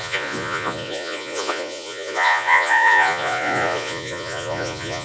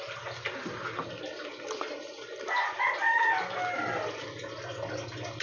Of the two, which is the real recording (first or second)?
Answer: second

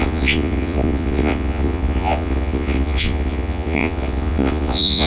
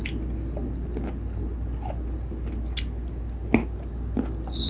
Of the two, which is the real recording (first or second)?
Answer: second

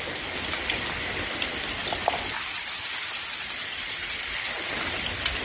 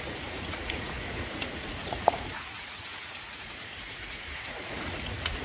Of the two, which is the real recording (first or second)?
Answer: first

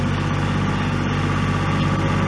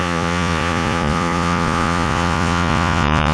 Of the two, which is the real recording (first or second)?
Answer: first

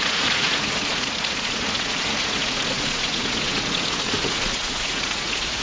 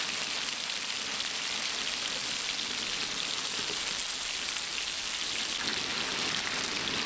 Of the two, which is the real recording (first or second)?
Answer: second